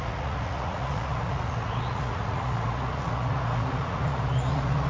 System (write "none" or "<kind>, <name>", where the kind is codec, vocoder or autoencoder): vocoder, Vocos